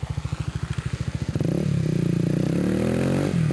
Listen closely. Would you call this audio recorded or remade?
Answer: recorded